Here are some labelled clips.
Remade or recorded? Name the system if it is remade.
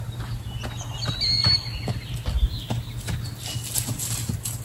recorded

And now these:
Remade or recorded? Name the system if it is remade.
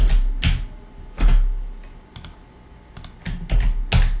recorded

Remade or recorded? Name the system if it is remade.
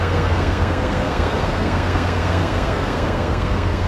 remade, codec, SNAC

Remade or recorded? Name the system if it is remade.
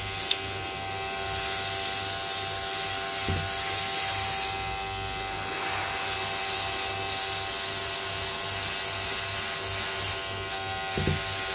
recorded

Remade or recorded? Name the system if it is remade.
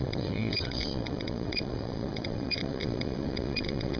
remade, vocoder, WaveNeXt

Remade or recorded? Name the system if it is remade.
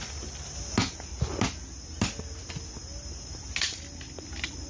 recorded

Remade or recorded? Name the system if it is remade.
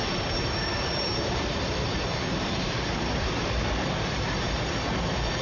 remade, vocoder, BigVGAN v2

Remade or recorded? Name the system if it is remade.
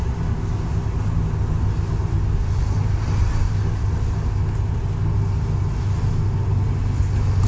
recorded